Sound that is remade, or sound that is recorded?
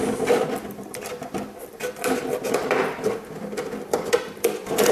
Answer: remade